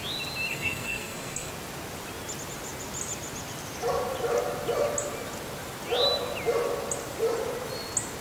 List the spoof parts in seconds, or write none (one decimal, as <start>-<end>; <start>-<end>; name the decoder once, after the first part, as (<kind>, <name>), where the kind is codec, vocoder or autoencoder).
0.5-1.5 (codec, SNAC)